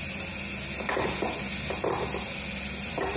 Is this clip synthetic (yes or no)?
no